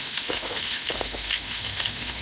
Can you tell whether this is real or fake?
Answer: fake